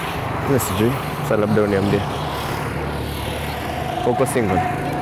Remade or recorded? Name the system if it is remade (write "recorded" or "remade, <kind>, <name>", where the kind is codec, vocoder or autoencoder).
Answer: recorded